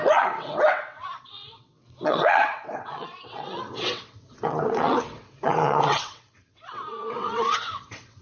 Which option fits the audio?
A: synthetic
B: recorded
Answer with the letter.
A